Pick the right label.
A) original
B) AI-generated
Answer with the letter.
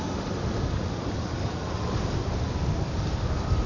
A